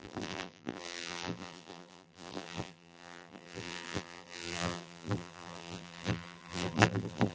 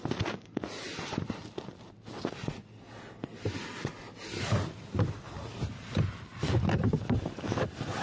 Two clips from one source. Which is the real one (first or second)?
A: second